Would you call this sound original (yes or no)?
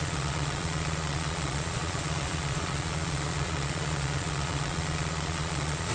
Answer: no